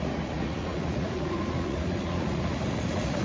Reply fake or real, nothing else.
fake